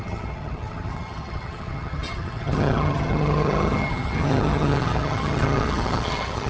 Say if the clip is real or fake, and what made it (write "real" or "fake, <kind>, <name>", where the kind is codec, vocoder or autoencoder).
fake, vocoder, HiFi-GAN